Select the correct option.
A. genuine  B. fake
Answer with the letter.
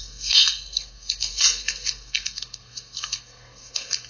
B